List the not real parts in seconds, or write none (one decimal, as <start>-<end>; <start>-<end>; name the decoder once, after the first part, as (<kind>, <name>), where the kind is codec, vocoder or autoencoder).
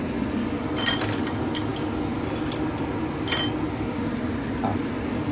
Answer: none